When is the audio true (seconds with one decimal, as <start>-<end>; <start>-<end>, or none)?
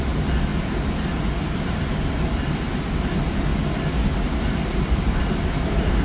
0.0-6.0